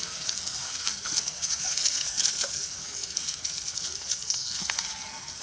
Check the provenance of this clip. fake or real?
fake